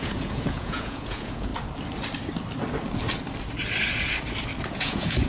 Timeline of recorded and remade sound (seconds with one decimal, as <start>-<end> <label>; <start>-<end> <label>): 0.0-1.5 remade; 1.5-4.7 recorded; 4.7-5.3 remade